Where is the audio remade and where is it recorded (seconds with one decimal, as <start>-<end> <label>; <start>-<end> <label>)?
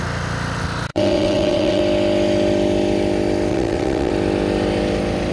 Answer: 0.0-0.9 recorded; 0.9-1.8 remade; 1.8-3.5 recorded; 3.5-4.1 remade; 4.1-5.3 recorded